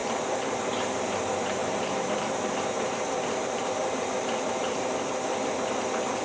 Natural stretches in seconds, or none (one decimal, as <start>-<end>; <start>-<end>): 1.2-1.6; 5.0-6.2